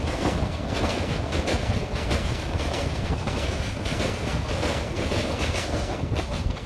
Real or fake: fake